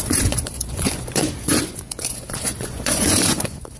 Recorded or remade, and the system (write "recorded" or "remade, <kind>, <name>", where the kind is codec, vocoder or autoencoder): remade, vocoder, Vocos